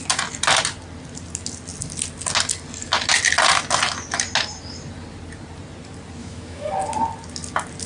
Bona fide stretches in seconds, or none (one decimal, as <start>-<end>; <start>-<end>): 0.0-6.2; 6.7-7.9